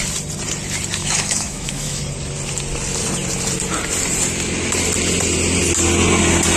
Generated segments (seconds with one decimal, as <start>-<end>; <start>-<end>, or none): 1.0-2.0